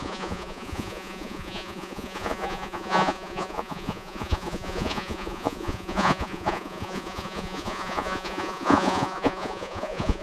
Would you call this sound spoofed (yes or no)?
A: yes